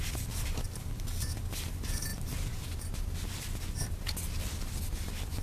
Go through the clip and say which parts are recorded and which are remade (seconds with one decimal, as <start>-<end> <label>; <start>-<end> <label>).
0.0-5.4 recorded